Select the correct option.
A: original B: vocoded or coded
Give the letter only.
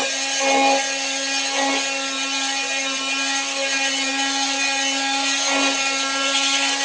A